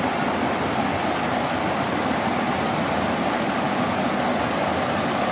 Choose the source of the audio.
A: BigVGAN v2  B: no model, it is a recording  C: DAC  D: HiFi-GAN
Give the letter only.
B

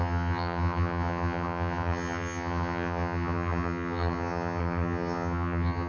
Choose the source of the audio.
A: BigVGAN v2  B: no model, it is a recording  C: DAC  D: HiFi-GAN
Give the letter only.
D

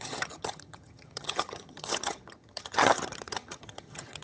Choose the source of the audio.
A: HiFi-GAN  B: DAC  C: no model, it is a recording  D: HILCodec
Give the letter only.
A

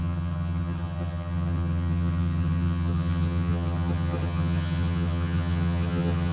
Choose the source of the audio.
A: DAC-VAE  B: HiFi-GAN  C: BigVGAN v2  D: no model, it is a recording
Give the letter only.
B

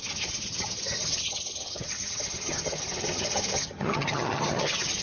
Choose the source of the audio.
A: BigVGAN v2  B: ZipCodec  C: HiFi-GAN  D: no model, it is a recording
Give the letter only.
C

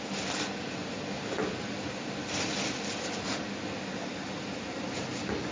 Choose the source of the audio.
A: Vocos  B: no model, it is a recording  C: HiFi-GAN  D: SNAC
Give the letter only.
B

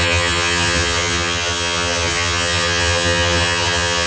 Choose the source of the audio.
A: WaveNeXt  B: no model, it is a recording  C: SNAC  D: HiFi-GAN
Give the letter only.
D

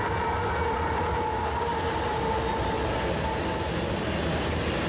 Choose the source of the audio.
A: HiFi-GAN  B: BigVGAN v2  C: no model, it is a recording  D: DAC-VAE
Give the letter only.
C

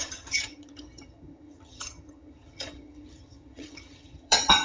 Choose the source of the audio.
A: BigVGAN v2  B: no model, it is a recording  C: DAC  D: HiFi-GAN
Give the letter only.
D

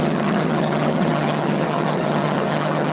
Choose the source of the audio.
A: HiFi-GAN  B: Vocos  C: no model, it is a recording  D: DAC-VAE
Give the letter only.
A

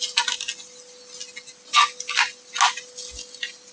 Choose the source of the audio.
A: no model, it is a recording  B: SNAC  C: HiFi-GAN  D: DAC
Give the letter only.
A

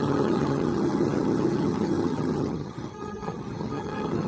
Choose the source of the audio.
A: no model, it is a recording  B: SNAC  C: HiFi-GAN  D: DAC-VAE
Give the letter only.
C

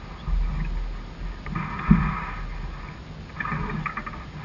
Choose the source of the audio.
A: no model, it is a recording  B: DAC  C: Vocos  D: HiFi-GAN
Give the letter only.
A